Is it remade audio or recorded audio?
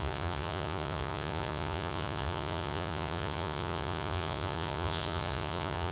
remade